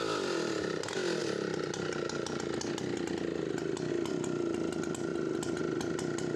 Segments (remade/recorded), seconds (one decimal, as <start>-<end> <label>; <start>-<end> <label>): 0.0-6.4 recorded